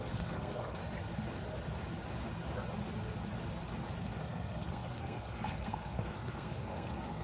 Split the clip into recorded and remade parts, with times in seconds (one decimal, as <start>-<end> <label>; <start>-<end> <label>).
0.0-0.8 remade; 0.8-4.0 recorded; 4.0-7.2 remade